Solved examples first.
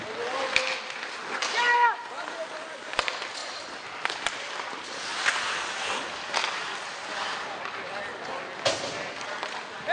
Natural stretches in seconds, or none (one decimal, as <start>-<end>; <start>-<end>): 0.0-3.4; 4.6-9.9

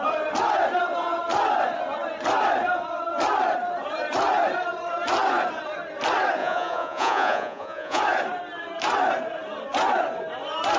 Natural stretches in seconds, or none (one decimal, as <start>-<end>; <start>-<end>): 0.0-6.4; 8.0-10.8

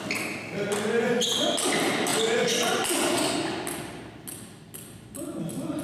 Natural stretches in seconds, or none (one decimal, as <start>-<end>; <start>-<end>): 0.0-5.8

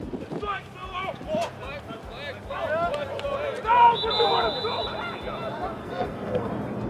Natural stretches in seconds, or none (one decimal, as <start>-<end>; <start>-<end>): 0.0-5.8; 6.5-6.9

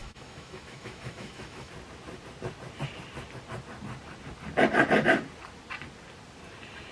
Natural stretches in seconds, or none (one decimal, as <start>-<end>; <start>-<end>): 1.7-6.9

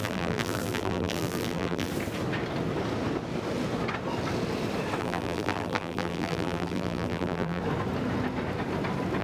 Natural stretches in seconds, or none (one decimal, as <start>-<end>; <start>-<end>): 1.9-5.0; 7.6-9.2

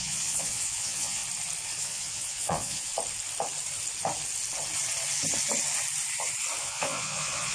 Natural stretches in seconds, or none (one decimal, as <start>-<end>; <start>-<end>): 1.2-1.8; 2.9-6.6

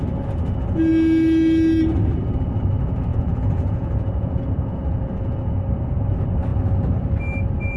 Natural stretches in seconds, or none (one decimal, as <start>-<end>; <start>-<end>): 0.0-3.1; 5.6-7.8